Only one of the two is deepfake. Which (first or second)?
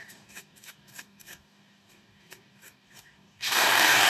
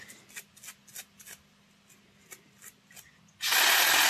first